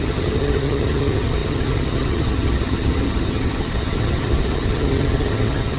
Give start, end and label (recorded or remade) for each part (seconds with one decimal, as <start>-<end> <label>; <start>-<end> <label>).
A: 0.0-5.8 remade